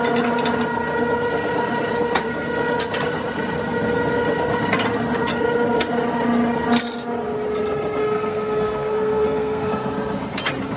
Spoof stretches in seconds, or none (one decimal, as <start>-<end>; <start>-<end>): 8.0-9.7